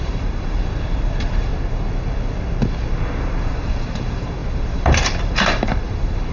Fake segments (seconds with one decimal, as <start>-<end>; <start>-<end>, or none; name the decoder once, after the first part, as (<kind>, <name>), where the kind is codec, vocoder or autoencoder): 0.0-1.5 (vocoder, BigVGAN v2); 3.0-6.3